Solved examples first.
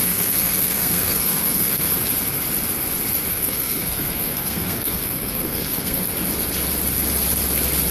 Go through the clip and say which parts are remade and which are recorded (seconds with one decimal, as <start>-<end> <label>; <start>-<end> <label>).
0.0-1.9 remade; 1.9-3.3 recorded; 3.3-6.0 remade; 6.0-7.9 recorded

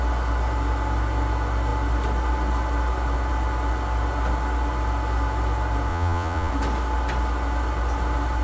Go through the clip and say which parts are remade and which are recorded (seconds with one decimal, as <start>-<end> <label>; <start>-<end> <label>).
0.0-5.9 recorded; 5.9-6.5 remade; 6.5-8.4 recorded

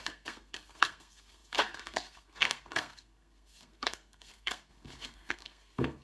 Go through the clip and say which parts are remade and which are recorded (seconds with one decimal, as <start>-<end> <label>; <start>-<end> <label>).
0.0-6.0 remade

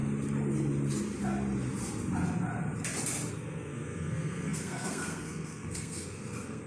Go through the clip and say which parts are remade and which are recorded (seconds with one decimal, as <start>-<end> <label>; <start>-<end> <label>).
0.0-3.3 recorded; 3.3-6.7 remade